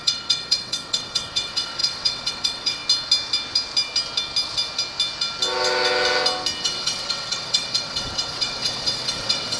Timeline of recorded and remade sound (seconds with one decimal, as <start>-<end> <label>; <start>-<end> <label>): 0.0-2.8 remade; 2.8-6.6 recorded; 6.6-9.6 remade